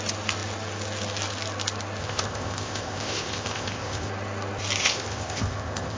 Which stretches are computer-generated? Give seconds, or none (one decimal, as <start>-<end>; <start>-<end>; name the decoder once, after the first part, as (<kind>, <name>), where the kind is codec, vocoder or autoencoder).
2.0-4.1 (codec, ZipCodec); 4.8-6.0